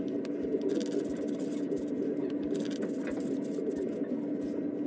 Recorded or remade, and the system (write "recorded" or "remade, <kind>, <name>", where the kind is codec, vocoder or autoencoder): recorded